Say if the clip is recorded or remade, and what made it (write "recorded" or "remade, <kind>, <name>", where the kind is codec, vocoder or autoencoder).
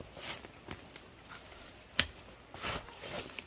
recorded